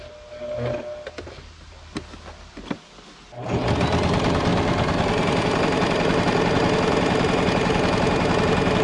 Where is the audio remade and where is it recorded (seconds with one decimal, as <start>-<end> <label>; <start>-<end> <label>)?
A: 0.0-8.8 recorded